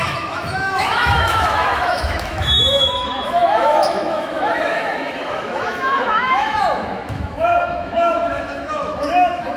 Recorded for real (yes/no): no